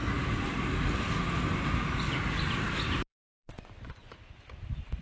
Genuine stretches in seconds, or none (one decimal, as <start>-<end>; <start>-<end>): 0.0-3.1; 4.1-5.0